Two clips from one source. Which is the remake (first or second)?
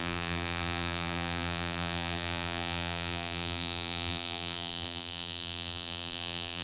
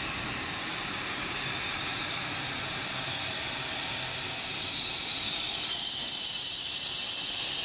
first